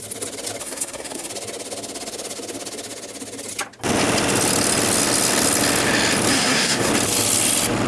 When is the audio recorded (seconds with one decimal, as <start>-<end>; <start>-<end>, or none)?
0.0-0.6; 1.3-6.3; 6.9-7.9